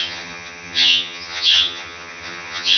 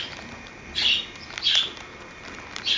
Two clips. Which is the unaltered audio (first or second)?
second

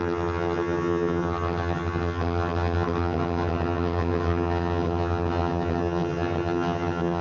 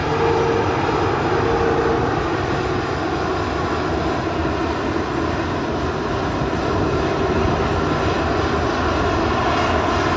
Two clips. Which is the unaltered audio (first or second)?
second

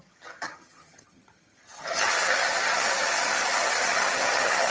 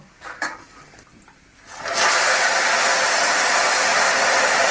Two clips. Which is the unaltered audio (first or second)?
second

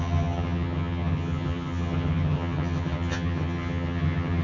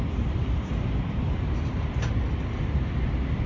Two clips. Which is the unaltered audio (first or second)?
second